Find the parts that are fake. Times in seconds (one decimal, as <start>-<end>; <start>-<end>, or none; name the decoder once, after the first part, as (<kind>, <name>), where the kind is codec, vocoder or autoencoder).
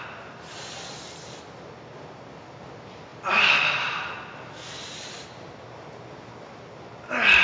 none